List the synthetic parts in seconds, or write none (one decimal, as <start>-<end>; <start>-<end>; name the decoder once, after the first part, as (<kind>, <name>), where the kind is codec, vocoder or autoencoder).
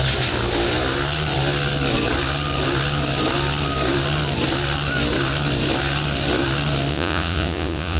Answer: 6.9-8.0 (vocoder, Vocos)